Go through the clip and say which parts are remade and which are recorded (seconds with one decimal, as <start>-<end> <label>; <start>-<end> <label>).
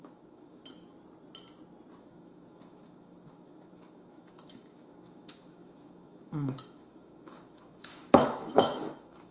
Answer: 0.0-0.6 remade; 0.6-2.0 recorded; 2.0-9.3 remade